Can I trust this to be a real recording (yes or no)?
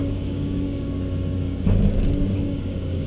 no